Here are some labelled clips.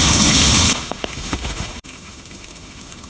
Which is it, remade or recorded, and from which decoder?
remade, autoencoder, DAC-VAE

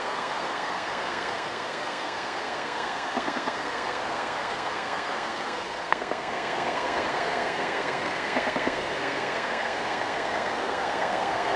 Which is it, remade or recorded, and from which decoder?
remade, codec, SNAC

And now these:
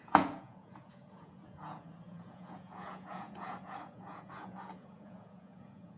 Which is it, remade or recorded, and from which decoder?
remade, vocoder, Vocos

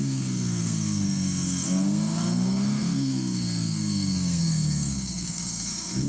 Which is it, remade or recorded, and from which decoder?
remade, codec, SNAC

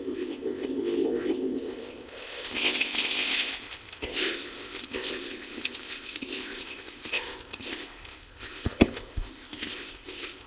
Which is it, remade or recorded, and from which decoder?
remade, codec, ZipCodec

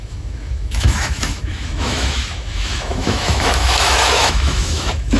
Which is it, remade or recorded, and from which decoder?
remade, autoencoder, DAC-VAE